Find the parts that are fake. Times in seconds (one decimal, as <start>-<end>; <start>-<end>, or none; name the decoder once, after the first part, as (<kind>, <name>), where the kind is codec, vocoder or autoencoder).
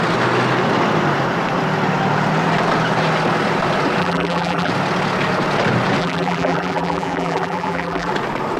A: 4.0-4.7 (vocoder, BigVGAN v2); 6.0-8.1